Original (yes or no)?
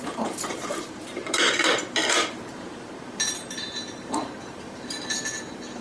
no